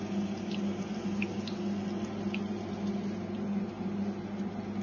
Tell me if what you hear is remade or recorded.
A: recorded